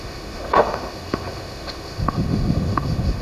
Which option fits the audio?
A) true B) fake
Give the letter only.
B